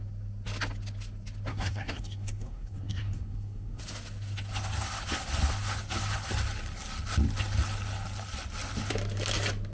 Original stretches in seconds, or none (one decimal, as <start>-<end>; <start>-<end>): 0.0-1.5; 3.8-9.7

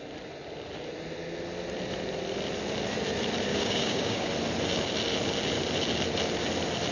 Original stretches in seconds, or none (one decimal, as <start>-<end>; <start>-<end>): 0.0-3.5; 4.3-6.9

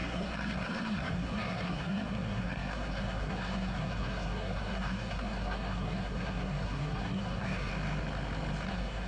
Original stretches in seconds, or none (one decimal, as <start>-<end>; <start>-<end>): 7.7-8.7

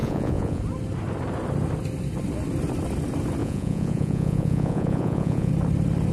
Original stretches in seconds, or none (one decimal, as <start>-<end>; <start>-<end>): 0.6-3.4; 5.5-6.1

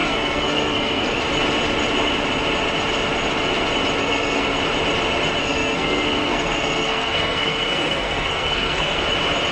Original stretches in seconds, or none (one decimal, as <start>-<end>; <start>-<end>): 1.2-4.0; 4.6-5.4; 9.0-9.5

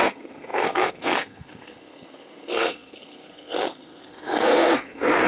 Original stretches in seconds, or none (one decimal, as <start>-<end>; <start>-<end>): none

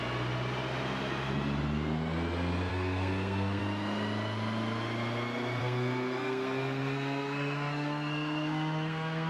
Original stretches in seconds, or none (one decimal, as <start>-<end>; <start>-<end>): 0.0-2.7; 3.6-5.6

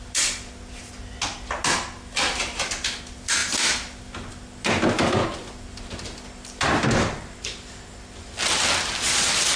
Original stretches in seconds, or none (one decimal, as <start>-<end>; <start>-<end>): 0.0-9.6